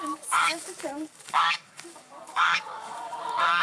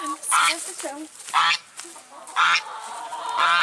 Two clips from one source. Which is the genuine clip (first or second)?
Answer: second